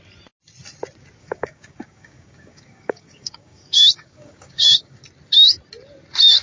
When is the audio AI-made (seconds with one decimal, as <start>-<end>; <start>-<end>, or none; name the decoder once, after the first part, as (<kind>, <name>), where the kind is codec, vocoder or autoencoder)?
1.2-5.0 (codec, DAC)